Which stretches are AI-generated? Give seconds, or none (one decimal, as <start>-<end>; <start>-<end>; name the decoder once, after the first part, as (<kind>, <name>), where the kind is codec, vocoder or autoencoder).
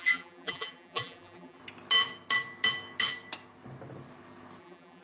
0.0-1.6 (vocoder, BigVGAN v2); 4.6-5.0